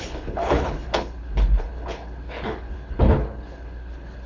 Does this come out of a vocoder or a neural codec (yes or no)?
yes